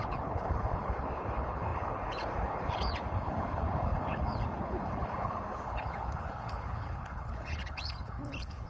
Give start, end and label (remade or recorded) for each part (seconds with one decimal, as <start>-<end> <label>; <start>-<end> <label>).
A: 0.0-8.7 remade